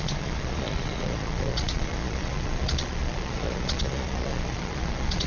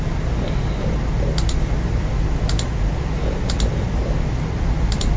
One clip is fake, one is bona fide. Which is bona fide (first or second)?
second